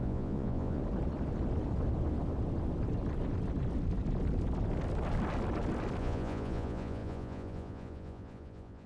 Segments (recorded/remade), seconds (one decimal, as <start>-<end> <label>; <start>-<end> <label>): 0.0-0.8 remade; 0.8-6.0 recorded; 6.0-8.9 remade